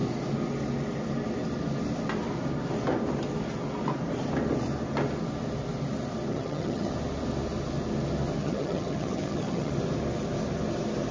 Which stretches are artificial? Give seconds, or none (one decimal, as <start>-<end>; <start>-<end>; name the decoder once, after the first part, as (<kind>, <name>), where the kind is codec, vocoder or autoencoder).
6.3-6.9 (vocoder, HiFi-GAN); 8.4-9.7